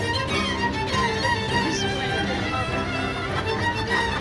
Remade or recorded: recorded